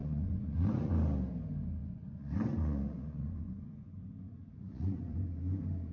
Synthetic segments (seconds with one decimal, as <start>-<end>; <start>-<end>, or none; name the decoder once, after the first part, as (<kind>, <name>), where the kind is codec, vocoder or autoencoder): 0.0-0.9 (vocoder, Vocos); 1.8-5.3